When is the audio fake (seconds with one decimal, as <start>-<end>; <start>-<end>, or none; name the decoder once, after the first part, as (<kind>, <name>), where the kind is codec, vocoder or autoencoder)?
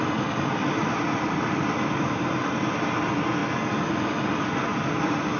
0.8-2.3 (vocoder, BigVGAN v2)